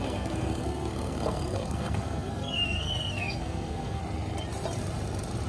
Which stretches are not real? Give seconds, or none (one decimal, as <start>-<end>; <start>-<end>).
0.0-4.0